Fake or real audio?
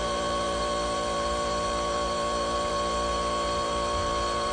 fake